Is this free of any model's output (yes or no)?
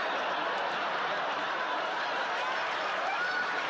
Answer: yes